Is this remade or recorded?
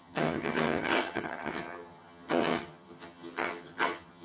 remade